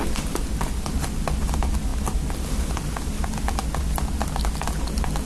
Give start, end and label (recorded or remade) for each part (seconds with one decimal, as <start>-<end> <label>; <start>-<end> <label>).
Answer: 0.0-5.3 recorded